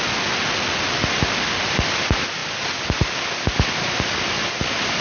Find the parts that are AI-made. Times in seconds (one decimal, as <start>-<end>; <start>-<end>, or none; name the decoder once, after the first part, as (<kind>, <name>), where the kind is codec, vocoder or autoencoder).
none